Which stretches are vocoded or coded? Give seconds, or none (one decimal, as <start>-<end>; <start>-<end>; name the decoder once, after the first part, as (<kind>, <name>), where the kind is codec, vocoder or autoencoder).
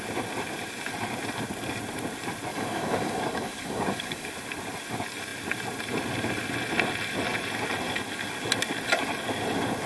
2.5-4.3 (codec, DAC)